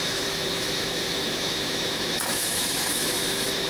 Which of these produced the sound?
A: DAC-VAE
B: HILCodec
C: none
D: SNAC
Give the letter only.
A